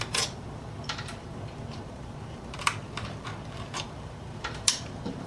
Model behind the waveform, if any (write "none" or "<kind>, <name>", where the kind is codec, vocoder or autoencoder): vocoder, BigVGAN v2